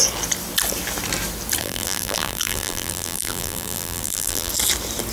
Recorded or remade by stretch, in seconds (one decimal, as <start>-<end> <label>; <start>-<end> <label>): 0.0-1.6 recorded; 1.6-4.5 remade; 4.5-5.1 recorded